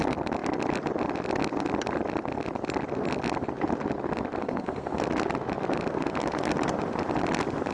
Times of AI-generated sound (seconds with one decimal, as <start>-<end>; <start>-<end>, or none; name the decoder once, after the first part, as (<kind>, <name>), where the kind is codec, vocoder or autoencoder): 4.4-5.0 (codec, SNAC)